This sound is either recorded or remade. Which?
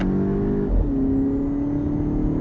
recorded